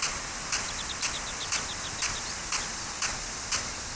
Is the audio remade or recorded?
recorded